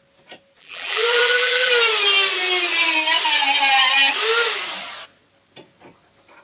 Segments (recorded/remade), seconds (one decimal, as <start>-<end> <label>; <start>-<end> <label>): 0.0-0.6 recorded; 0.6-1.7 remade; 1.7-6.4 recorded